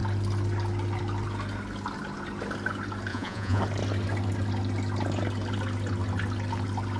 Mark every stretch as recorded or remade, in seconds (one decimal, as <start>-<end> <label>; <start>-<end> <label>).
0.0-3.1 recorded; 3.1-3.6 remade; 3.6-7.0 recorded